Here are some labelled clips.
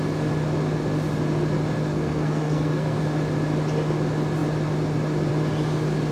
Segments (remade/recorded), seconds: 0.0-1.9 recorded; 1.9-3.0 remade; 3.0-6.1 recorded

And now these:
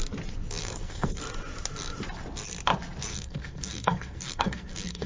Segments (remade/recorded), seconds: 0.0-0.6 recorded; 0.6-1.2 remade; 1.2-3.1 recorded; 3.1-5.1 remade

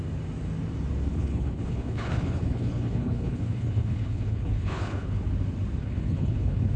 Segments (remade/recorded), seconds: 0.0-1.1 recorded; 1.1-5.2 remade; 5.2-5.8 recorded; 5.8-6.8 remade

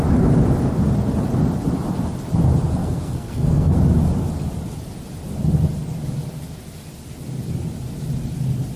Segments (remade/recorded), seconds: 0.0-2.8 recorded; 2.8-3.8 remade; 3.8-8.8 recorded

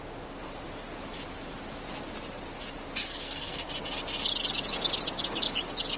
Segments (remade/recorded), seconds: 0.0-3.0 recorded; 3.0-3.7 remade; 3.7-6.0 recorded

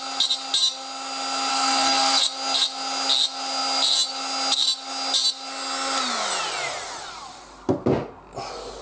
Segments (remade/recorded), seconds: 0.0-1.5 recorded; 1.5-2.2 remade; 2.2-8.8 recorded